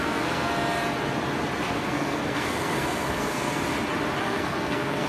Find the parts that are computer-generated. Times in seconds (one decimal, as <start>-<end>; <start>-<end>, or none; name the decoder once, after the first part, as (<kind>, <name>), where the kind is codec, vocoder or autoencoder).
0.0-0.5 (codec, SNAC); 1.7-3.6; 4.2-5.1